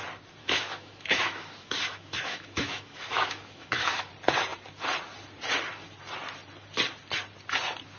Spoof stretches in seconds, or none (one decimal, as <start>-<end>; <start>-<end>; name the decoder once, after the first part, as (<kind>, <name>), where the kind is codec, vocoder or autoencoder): 0.4-4.1 (autoencoder, DAC-VAE)